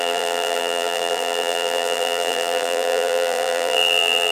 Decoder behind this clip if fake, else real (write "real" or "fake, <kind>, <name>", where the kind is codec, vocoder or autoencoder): fake, vocoder, BigVGAN v2